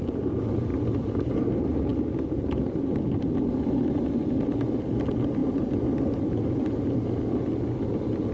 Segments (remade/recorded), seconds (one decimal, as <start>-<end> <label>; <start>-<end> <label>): 0.0-8.3 recorded

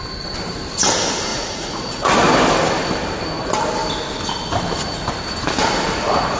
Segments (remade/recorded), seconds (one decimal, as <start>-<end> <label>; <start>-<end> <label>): 0.0-1.3 recorded; 1.3-2.1 remade; 2.1-6.4 recorded

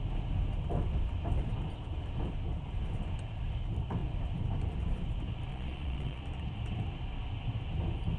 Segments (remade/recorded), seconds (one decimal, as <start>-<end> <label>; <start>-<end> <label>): 0.0-5.5 recorded; 5.5-6.2 remade; 6.2-8.2 recorded